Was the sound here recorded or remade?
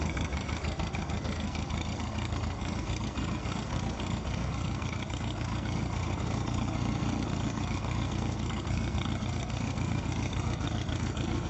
remade